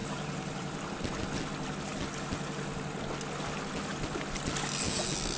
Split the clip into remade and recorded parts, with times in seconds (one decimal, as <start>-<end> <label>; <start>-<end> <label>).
0.0-1.4 remade; 1.4-5.4 recorded